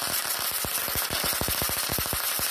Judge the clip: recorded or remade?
recorded